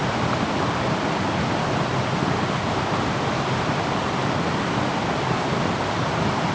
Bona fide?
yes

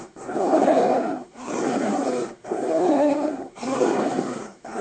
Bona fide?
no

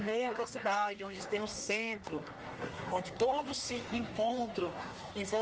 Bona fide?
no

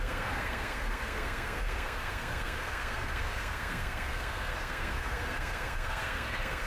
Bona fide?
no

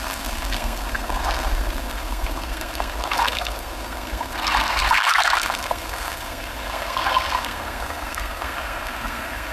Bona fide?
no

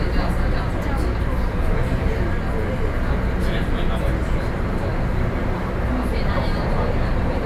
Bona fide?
yes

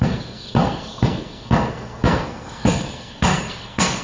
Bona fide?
no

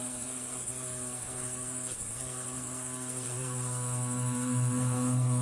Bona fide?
no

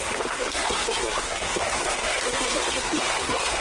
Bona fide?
no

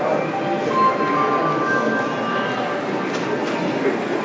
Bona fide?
yes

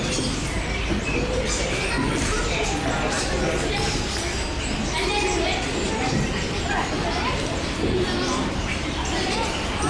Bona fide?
yes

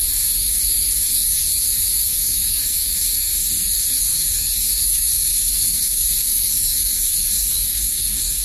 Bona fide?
no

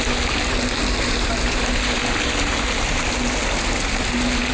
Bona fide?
yes